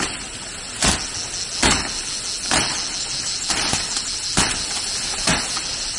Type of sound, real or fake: real